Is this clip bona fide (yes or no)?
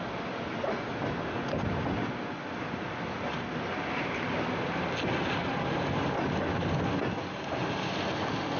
yes